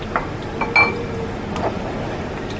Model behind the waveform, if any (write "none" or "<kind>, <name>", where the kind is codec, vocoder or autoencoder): none